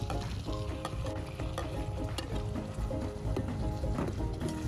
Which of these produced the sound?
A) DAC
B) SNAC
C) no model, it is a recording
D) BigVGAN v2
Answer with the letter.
C